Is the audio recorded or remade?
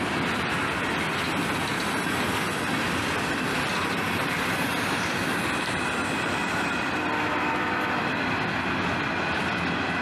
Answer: recorded